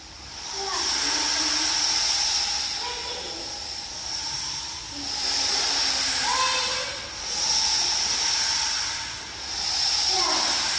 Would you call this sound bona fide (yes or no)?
yes